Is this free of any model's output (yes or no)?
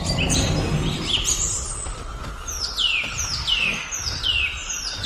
no